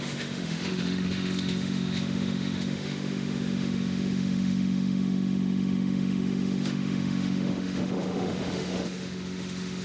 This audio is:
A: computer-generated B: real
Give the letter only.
A